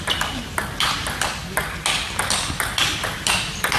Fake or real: real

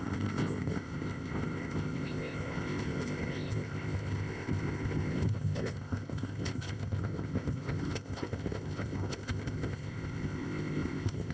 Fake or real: fake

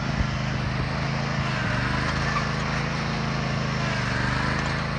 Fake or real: real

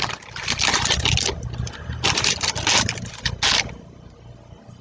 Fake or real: real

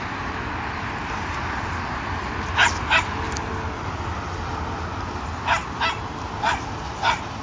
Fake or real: real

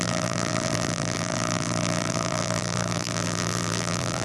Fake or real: fake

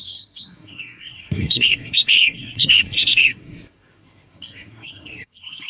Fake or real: fake